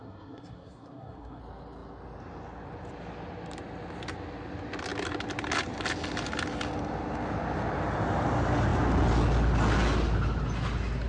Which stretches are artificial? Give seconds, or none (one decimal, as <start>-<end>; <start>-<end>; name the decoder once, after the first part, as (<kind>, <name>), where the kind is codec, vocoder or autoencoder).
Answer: 0.0-1.4 (codec, SNAC)